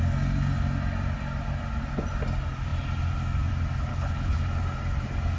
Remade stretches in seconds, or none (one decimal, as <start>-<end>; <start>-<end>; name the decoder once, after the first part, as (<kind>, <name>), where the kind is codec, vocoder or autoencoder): 3.9-4.4 (codec, HILCodec)